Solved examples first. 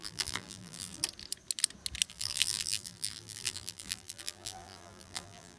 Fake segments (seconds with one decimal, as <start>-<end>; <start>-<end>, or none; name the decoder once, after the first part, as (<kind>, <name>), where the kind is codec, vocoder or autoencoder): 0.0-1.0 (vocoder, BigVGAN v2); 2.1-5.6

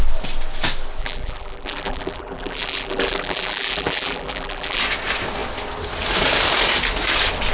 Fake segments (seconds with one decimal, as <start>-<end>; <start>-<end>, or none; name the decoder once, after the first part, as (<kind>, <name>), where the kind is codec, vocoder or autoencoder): 1.0-4.8 (vocoder, BigVGAN v2)

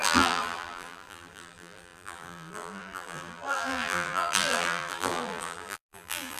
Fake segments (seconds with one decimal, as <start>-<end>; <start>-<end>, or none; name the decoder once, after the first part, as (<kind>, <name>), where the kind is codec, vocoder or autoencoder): 0.0-6.4 (vocoder, BigVGAN v2)

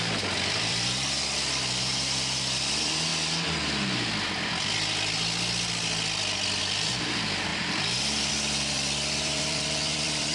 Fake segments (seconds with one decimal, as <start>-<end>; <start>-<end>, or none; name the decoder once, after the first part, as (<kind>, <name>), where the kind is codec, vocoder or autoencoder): 0.0-3.1 (vocoder, BigVGAN v2); 6.6-10.3